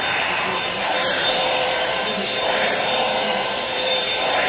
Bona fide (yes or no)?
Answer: no